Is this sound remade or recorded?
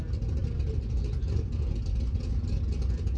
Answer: recorded